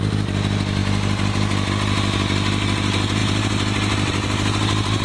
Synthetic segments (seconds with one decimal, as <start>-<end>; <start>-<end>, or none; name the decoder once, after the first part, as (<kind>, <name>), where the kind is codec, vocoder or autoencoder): none